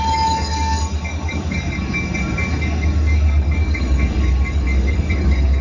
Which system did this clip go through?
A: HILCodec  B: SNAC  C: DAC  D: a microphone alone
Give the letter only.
C